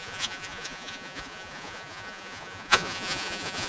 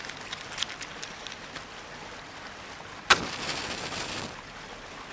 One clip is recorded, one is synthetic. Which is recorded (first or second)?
second